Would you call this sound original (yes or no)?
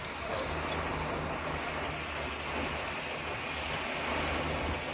yes